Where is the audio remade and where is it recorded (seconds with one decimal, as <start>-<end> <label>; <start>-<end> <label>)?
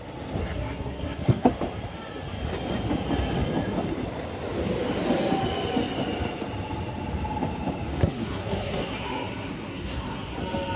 0.0-0.4 recorded; 0.4-1.5 remade; 1.5-7.9 recorded; 7.9-10.4 remade; 10.4-10.8 recorded